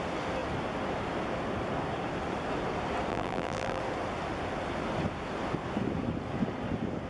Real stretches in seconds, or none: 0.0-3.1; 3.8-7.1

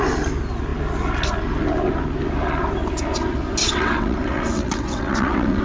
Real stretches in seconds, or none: 0.0-3.6

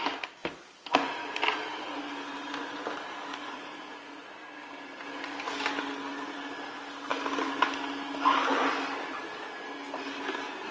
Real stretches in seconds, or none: 0.0-3.3; 4.3-10.7

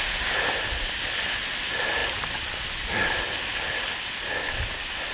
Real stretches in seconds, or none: 0.0-5.1